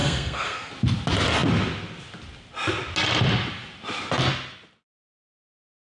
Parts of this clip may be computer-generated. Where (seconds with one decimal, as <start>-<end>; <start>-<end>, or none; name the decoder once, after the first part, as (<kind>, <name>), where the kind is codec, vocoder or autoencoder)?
0.0-0.7 (codec, SNAC)